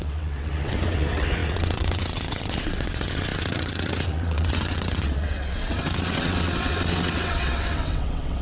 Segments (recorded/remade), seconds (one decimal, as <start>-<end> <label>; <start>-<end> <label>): 0.0-8.4 remade